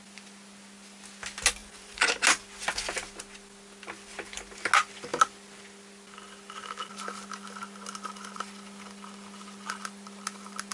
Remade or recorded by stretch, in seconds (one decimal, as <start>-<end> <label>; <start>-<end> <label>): 0.0-1.6 recorded; 1.6-2.1 remade; 2.1-10.7 recorded